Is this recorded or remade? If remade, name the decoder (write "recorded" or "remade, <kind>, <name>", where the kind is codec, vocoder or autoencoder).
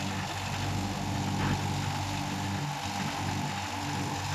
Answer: recorded